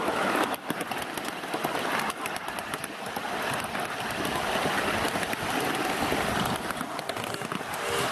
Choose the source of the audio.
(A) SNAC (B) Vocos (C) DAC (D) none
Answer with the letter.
D